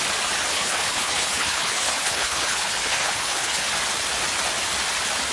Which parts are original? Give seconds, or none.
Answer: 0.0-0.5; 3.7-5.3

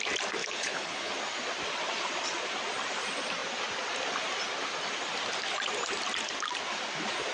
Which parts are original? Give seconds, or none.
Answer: 0.0-0.4; 1.1-7.3

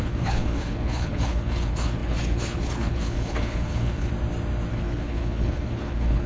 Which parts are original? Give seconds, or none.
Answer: 4.1-4.7

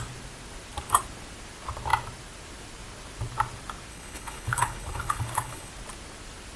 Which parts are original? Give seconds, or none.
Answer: 0.0-3.9; 5.7-6.6